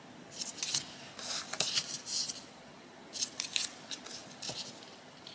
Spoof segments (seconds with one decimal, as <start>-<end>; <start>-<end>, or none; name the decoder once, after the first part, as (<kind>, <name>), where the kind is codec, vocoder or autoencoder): none